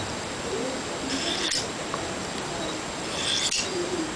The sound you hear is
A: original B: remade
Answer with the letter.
A